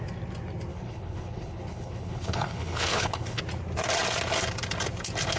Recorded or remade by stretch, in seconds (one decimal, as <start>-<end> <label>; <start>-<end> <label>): 0.0-0.7 recorded; 0.7-3.4 remade; 3.4-5.4 recorded